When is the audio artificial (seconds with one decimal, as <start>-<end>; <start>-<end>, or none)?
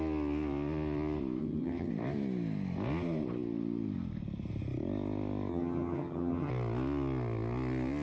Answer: 1.4-1.9; 5.5-6.5